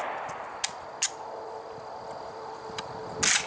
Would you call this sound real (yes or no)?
yes